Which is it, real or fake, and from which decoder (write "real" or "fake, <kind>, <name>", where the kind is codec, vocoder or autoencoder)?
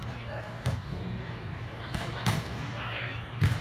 fake, codec, DAC